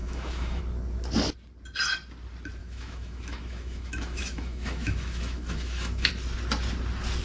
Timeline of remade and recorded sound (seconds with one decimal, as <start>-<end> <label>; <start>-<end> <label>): 0.0-0.6 remade; 0.6-2.6 recorded; 2.6-6.1 remade; 6.1-7.2 recorded